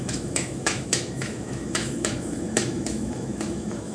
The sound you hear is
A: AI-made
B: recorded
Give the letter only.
A